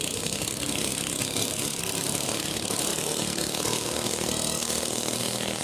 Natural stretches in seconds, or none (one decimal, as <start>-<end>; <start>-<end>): none